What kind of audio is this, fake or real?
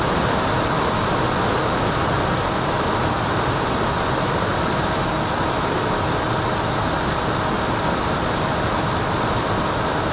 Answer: real